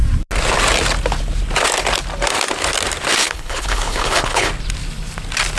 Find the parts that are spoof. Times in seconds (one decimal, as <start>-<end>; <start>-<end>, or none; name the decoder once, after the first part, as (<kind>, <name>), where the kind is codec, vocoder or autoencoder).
3.2-4.5 (codec, HILCodec)